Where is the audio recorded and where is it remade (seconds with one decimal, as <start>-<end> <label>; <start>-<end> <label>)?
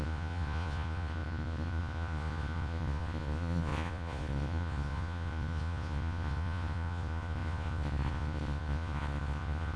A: 0.0-9.8 remade